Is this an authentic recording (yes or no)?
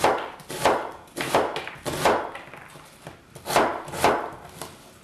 yes